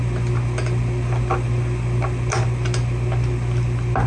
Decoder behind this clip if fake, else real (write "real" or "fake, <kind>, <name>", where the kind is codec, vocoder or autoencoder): real